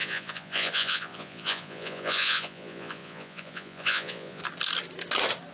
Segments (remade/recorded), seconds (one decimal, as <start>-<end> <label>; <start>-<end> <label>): 0.0-4.4 remade; 4.4-5.5 recorded